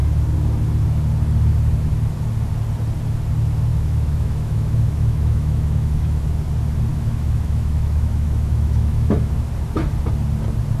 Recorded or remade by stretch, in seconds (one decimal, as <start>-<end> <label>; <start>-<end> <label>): 0.0-3.7 recorded; 3.7-6.2 remade; 6.2-6.9 recorded; 6.9-9.3 remade; 9.3-10.8 recorded